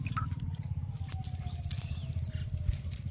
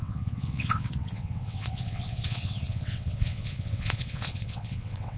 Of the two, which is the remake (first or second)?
second